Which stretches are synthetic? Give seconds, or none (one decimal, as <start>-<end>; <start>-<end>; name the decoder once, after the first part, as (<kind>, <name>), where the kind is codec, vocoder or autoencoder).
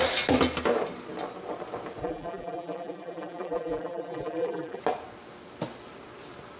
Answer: 2.0-4.8 (vocoder, BigVGAN v2)